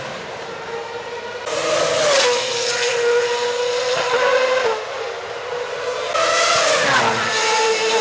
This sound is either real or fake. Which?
real